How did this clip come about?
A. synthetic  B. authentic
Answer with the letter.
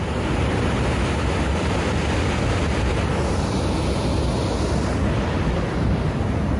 B